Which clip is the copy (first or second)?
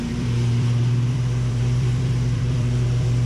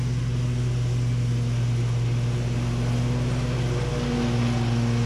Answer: first